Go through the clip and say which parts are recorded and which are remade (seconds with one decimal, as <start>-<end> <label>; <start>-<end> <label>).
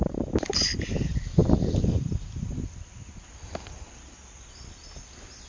0.0-5.5 recorded